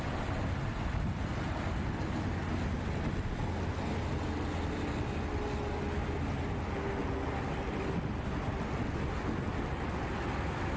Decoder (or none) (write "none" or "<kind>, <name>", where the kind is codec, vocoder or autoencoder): none